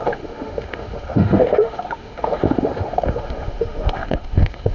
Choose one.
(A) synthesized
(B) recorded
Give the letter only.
A